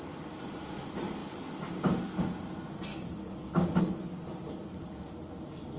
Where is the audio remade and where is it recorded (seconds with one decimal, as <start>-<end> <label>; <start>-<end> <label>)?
0.0-2.9 recorded; 2.9-3.8 remade; 3.8-5.8 recorded